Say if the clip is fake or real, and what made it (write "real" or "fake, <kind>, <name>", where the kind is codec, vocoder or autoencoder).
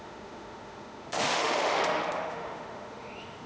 fake, autoencoder, DAC-VAE